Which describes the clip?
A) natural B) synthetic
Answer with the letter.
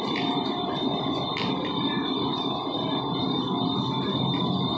B